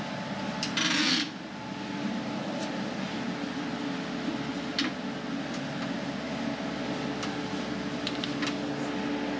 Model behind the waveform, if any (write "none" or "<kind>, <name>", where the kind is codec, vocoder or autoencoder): none